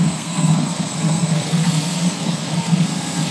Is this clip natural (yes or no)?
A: no